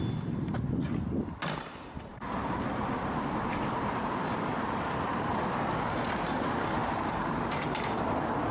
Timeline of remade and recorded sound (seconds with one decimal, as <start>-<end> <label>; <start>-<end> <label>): 0.0-2.1 recorded; 2.1-5.3 remade; 5.3-6.8 recorded; 6.8-8.0 remade; 8.0-8.5 recorded